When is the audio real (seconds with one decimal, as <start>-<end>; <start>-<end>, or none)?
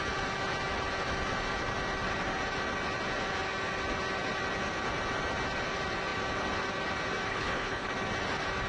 0.0-7.3; 7.9-8.7